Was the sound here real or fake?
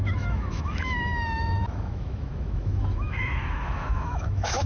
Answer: fake